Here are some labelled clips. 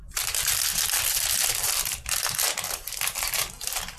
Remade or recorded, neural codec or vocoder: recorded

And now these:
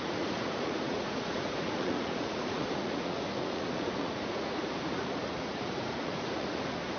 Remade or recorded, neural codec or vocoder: remade, vocoder, Vocos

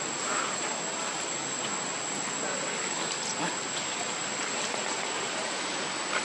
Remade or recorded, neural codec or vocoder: recorded